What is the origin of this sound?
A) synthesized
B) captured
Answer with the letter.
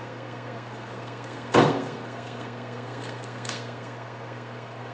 A